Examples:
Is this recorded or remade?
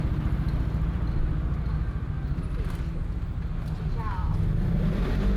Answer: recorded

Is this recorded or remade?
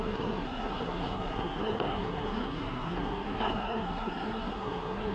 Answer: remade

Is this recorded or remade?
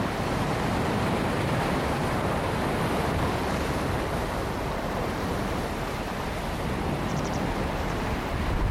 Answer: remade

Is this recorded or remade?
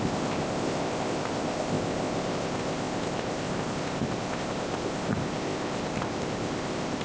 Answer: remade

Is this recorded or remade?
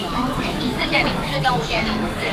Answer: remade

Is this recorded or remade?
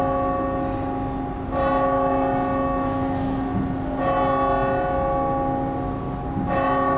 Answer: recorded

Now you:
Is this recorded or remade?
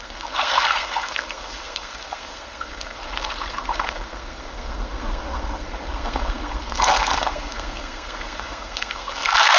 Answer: remade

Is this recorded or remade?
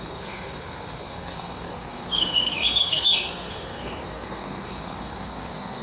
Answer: remade